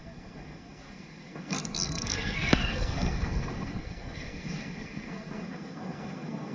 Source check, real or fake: fake